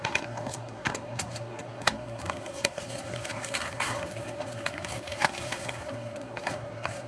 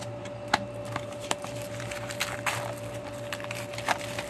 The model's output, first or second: first